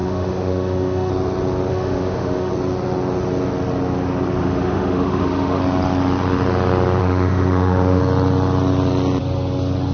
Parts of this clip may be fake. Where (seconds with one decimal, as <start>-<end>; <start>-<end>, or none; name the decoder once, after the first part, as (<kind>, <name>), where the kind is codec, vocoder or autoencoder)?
0.0-1.1 (autoencoder, DAC-VAE); 1.7-2.5; 4.4-5.6; 7.0-8.0